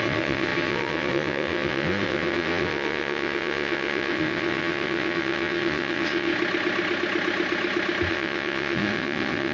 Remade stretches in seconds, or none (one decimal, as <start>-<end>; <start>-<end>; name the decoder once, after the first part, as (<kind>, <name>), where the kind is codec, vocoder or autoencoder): 0.0-6.3 (vocoder, WaveNeXt); 8.1-9.5